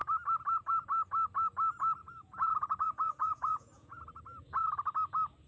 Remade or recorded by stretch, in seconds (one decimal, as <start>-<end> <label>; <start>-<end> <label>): 0.0-2.0 recorded; 2.0-4.0 remade; 4.0-5.5 recorded